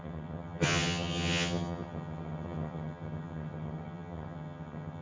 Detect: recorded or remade remade